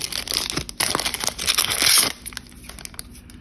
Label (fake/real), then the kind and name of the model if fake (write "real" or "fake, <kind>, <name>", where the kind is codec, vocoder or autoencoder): real